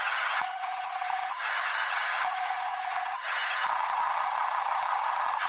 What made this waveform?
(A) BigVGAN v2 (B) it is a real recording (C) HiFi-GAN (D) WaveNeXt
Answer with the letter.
C